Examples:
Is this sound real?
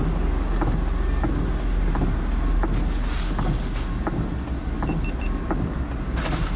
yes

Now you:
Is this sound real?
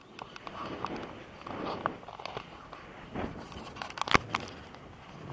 yes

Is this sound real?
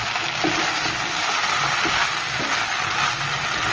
yes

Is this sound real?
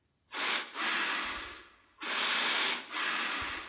yes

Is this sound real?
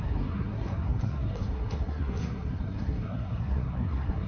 no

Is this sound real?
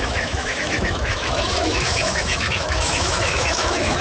no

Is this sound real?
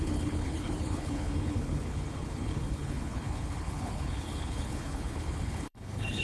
no